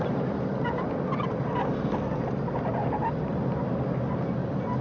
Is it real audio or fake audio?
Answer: real